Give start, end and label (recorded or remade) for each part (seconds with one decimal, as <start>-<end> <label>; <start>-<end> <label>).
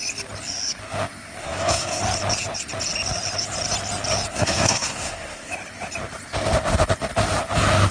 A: 0.0-1.4 recorded; 1.4-2.0 remade; 2.0-4.3 recorded; 4.3-5.5 remade; 5.5-7.9 recorded